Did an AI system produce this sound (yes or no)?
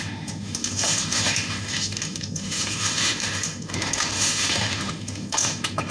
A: yes